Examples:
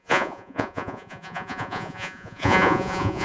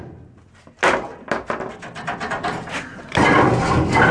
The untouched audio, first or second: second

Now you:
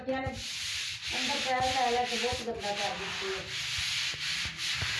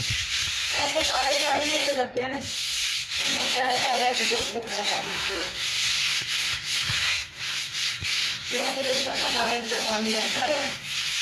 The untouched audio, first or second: first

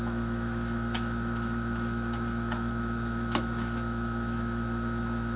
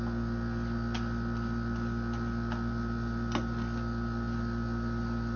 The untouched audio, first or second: second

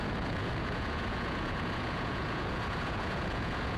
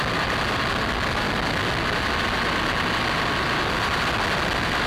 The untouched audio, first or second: second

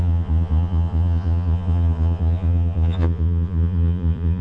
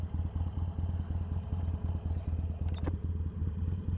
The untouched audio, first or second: second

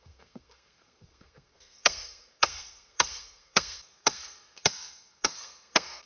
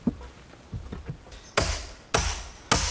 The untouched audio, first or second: second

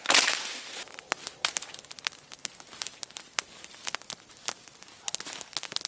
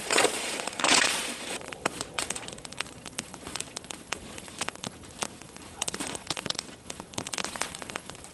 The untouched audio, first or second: first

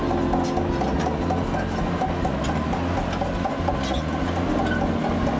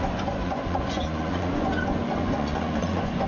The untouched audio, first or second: first